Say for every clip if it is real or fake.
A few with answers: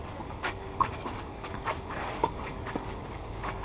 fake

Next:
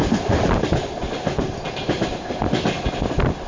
real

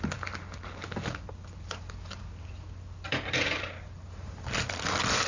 real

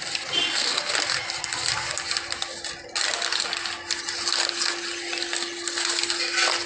real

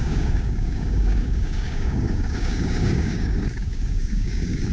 fake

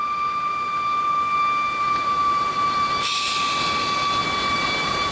real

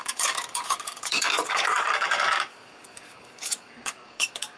fake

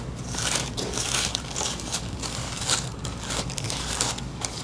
fake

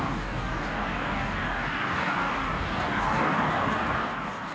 fake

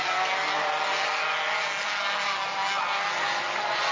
real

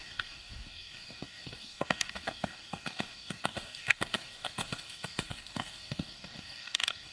fake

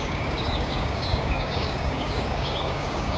fake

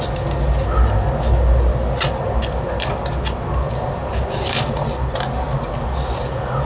real